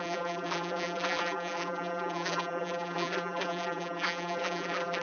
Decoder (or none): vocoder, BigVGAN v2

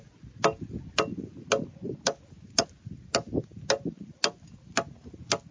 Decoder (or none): none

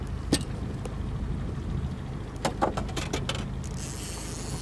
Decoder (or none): none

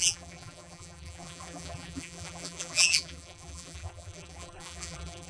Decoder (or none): vocoder, BigVGAN v2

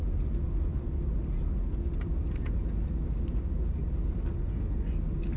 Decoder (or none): none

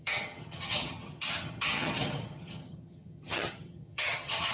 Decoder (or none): vocoder, HiFi-GAN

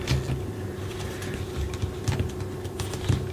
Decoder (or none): none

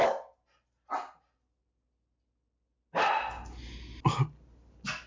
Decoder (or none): none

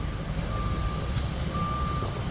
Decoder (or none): none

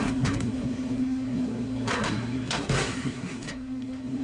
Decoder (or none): codec, SNAC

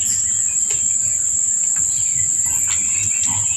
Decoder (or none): none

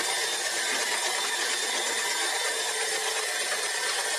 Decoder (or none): none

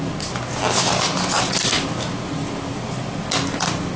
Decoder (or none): none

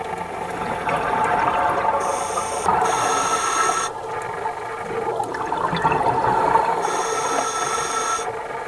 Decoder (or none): none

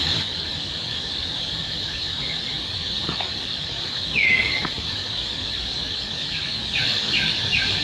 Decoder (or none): codec, DAC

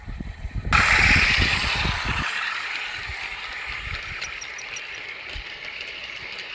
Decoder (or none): none